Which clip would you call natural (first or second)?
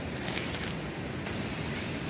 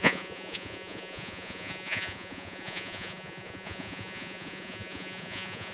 first